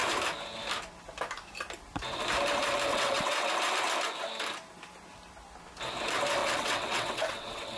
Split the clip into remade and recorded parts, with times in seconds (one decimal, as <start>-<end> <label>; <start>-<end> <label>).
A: 0.0-2.9 recorded; 2.9-3.5 remade; 3.5-6.4 recorded; 6.4-7.8 remade